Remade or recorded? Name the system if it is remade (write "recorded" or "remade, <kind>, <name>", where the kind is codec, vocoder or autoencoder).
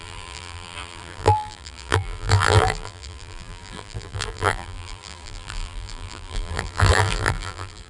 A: remade, vocoder, BigVGAN v2